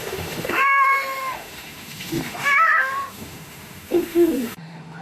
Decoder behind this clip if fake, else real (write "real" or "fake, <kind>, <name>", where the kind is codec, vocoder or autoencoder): fake, autoencoder, DAC-VAE